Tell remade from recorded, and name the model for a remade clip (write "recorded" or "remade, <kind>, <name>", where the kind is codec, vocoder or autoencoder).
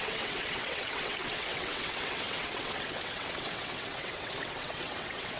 remade, vocoder, WaveNeXt